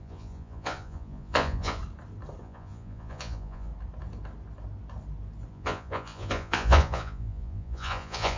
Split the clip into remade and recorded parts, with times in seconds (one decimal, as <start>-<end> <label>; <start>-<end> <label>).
0.0-1.8 remade; 1.8-2.4 recorded; 2.4-3.7 remade; 3.7-5.5 recorded; 5.5-8.4 remade